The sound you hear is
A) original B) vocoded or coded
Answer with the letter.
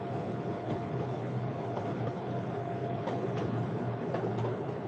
B